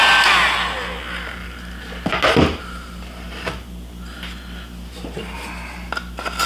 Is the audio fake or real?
real